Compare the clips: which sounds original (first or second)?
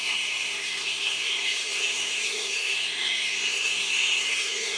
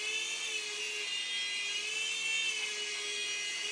second